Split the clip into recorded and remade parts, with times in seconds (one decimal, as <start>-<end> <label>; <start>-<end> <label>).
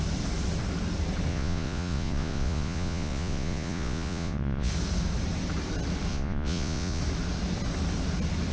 0.0-1.3 recorded; 1.3-4.7 remade; 4.7-6.1 recorded; 6.1-7.0 remade; 7.0-8.5 recorded